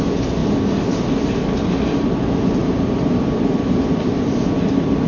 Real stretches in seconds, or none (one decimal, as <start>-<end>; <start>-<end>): 0.0-5.1